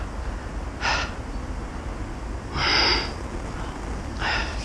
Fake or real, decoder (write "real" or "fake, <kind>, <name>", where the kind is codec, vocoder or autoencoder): real